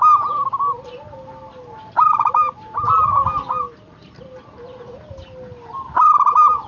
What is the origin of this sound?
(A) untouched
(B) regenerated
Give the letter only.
A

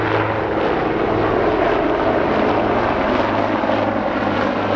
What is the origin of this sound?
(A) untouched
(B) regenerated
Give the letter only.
A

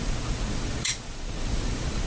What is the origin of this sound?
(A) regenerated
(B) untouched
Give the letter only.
A